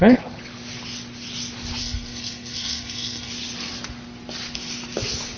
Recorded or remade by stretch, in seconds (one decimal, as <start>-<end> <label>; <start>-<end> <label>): 0.0-1.8 recorded; 1.8-3.3 remade; 3.3-5.4 recorded

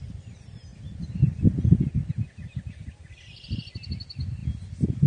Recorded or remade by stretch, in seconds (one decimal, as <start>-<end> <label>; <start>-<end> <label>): 0.0-0.7 recorded; 0.7-2.1 remade; 2.1-5.1 recorded

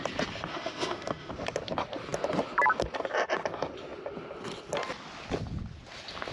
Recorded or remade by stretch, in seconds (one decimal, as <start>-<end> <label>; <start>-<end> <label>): 0.0-0.5 recorded; 0.5-1.3 remade; 1.3-6.3 recorded